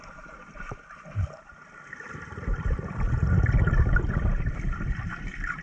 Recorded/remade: recorded